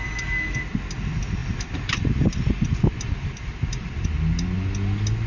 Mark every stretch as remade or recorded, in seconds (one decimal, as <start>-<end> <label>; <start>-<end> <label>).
0.0-1.4 recorded; 1.4-4.1 remade; 4.1-5.3 recorded